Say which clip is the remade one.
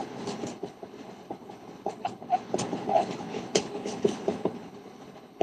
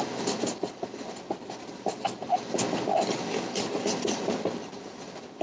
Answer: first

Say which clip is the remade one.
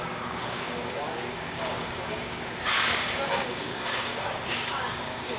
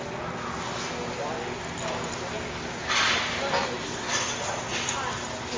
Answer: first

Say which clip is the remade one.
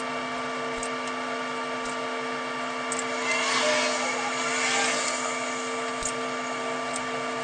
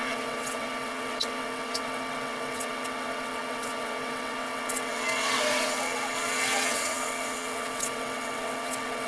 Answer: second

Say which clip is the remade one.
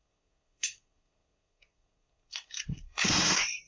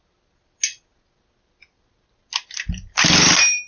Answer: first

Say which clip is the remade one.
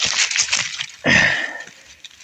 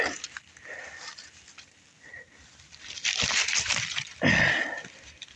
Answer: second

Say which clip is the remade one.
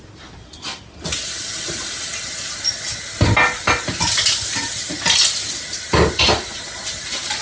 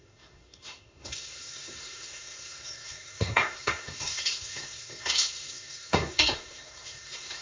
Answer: second